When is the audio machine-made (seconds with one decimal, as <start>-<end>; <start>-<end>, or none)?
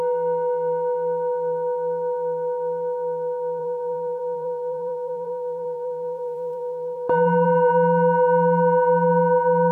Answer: 3.6-7.7